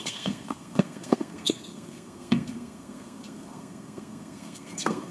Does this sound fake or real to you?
fake